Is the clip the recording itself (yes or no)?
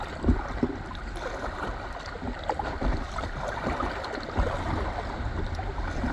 yes